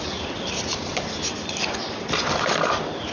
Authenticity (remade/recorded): recorded